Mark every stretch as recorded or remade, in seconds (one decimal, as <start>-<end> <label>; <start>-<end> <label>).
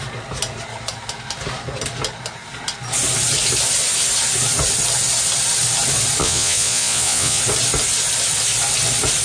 0.0-6.2 recorded; 6.2-7.4 remade; 7.4-9.2 recorded